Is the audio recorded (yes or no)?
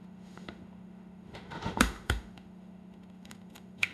no